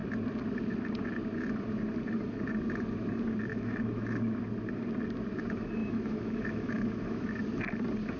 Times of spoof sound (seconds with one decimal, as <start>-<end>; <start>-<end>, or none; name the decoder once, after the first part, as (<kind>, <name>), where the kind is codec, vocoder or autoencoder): 3.5-4.4 (autoencoder, DAC-VAE); 5.8-7.4